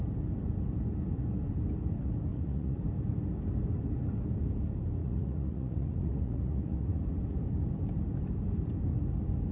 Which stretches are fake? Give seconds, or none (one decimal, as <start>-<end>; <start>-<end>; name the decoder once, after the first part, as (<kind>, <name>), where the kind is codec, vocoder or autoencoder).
2.3-2.8 (vocoder, Vocos); 5.0-7.0